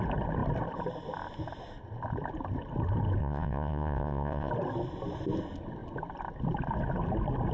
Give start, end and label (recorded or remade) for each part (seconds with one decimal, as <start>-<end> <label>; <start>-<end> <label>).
0.0-3.2 recorded; 3.2-4.5 remade; 4.5-7.5 recorded